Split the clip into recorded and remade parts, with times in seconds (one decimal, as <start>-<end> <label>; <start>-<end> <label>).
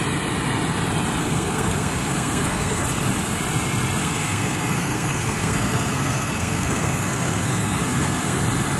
0.0-1.2 recorded; 1.2-2.8 remade; 2.8-4.0 recorded; 4.0-8.4 remade; 8.4-8.8 recorded